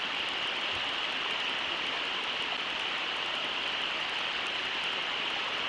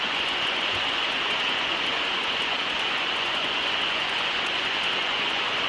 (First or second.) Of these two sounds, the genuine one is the first